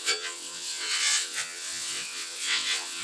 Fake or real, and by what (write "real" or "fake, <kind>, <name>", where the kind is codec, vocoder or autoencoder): fake, vocoder, WaveNeXt